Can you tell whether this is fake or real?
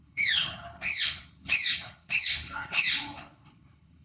fake